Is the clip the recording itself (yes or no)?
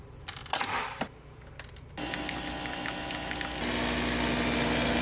yes